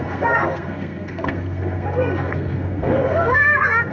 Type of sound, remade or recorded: remade